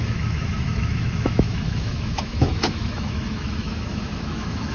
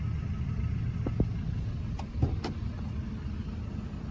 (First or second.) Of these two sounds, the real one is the second